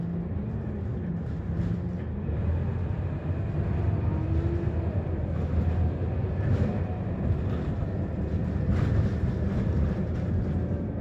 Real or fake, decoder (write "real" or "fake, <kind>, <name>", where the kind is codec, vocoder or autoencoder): real